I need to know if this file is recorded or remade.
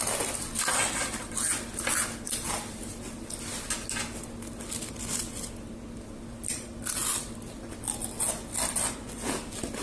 recorded